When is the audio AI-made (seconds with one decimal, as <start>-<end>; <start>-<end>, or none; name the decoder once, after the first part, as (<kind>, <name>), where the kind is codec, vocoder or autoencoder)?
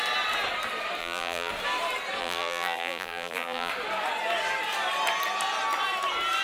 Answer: 1.0-1.5 (vocoder, BigVGAN v2); 2.2-3.7